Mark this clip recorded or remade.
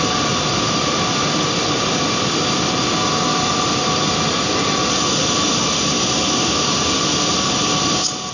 recorded